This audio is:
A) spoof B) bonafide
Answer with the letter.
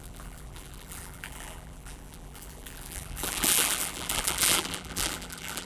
A